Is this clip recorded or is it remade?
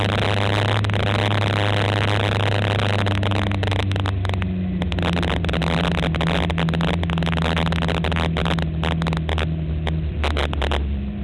recorded